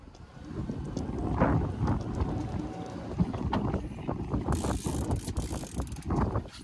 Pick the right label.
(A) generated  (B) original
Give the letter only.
B